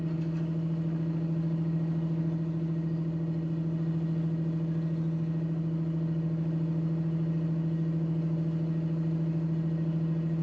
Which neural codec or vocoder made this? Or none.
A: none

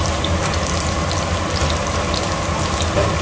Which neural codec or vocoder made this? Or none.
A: none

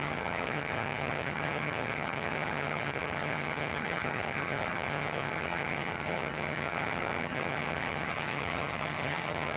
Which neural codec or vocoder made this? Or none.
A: vocoder, HiFi-GAN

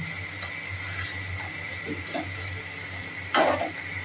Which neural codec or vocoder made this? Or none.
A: none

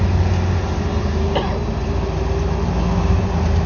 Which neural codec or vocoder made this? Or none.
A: none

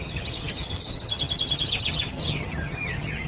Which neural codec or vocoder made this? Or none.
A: vocoder, HiFi-GAN